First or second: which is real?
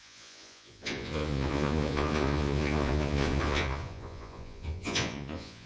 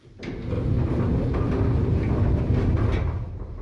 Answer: second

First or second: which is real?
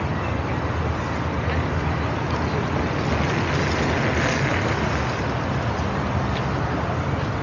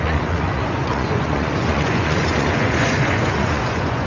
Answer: first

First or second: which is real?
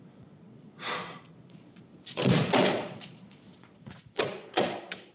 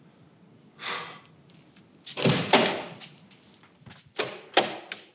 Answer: second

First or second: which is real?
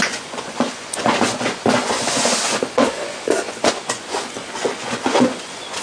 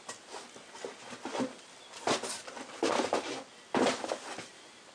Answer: second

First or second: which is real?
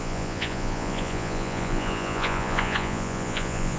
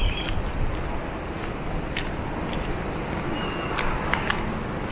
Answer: second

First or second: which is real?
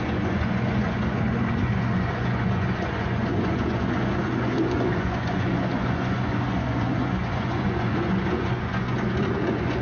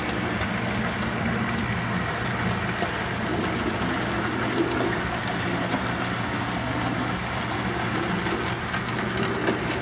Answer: second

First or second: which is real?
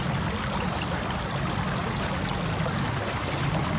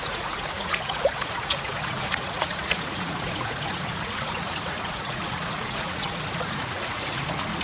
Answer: first